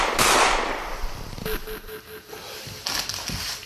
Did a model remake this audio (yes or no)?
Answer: no